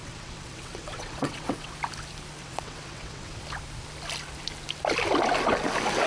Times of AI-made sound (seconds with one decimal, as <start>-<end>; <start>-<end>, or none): 0.0-1.7; 2.4-3.4